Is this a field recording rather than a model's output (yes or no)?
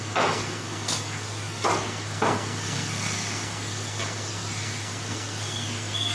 no